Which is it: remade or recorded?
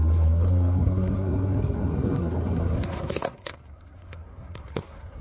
remade